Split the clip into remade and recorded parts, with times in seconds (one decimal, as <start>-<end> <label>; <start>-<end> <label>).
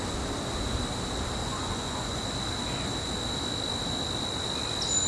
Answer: 0.0-1.4 recorded; 1.4-2.2 remade; 2.2-5.1 recorded